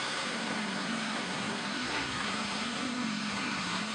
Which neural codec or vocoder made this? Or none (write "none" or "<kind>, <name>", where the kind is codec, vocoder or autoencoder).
codec, SNAC